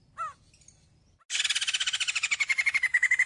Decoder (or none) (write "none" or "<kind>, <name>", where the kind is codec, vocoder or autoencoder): none